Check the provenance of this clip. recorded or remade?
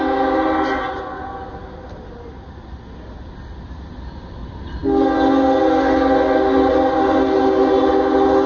recorded